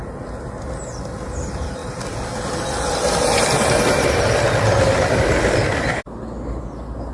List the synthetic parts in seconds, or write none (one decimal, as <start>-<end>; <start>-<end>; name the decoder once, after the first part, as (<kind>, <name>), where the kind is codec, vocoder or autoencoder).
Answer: none